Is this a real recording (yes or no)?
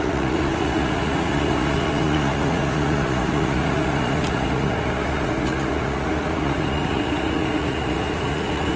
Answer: no